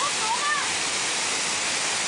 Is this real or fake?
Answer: real